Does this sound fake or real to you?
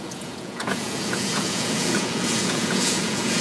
fake